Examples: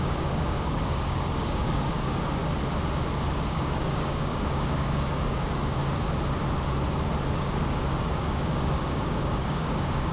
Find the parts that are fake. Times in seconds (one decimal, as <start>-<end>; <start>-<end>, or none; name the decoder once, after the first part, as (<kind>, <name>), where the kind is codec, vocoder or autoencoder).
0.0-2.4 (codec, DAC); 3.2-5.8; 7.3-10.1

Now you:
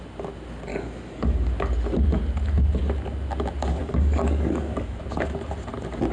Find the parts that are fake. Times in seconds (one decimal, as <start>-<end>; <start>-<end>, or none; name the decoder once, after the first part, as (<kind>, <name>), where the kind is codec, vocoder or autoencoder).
0.7-1.5 (codec, DAC); 3.8-5.0

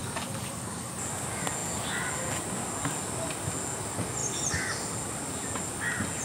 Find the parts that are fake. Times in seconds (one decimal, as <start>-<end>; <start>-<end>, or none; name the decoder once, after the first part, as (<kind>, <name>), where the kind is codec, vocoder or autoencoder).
0.0-0.9 (codec, DAC)

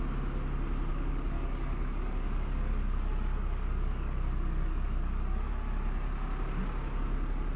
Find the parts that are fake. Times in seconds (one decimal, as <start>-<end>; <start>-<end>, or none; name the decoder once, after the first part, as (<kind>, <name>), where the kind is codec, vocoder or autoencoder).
0.9-5.5 (codec, DAC)

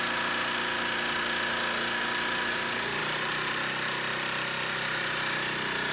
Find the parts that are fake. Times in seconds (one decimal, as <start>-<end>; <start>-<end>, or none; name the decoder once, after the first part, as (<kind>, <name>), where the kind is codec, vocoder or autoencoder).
none

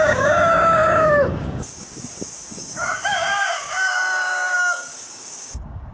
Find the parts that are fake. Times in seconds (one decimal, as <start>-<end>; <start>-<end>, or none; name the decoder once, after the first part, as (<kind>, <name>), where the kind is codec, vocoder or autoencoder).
0.0-5.9 (codec, DAC)